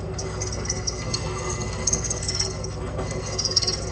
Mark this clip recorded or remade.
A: remade